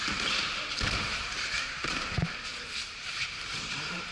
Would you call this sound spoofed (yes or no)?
yes